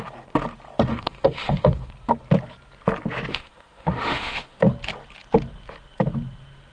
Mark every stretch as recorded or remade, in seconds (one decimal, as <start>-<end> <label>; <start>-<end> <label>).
0.0-0.9 recorded; 0.9-1.9 remade; 1.9-3.3 recorded; 3.3-4.6 remade; 4.6-6.7 recorded